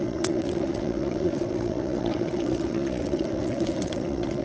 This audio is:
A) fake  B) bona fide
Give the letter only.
A